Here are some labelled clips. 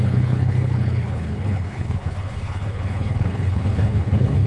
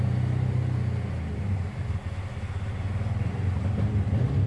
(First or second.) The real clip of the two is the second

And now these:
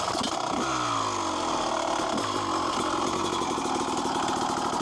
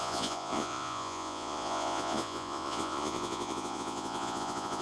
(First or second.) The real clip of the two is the first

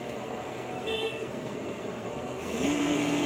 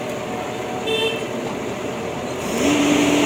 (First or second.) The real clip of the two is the second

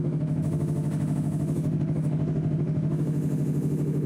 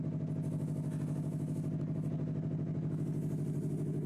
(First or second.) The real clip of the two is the second